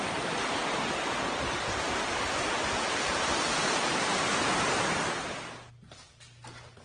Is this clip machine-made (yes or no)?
no